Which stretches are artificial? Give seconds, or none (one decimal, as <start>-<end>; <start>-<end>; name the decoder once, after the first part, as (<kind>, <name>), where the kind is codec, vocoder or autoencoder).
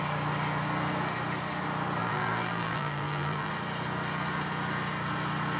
2.0-3.5 (vocoder, BigVGAN v2)